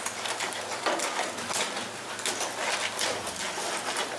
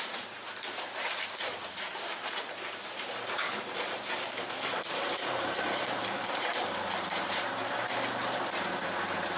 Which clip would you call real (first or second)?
first